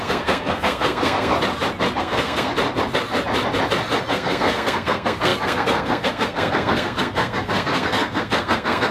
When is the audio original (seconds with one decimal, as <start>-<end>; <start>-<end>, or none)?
1.3-2.0; 2.5-4.1